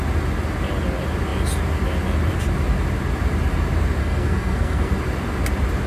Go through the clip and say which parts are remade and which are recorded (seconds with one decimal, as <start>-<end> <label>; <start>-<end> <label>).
0.0-4.0 recorded; 4.0-4.9 remade; 4.9-5.9 recorded